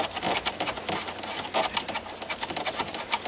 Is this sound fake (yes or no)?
no